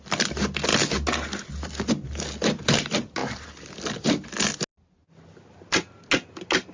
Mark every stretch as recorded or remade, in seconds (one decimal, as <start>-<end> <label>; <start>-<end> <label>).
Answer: 0.0-6.7 recorded